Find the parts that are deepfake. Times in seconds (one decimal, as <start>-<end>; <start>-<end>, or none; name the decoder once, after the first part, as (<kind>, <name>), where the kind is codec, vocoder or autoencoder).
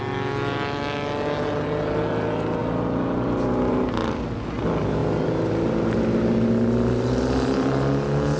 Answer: none